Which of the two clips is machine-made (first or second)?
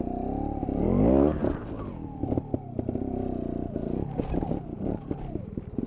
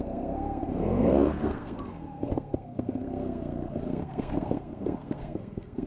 second